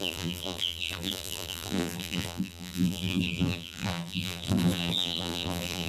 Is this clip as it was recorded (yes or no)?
no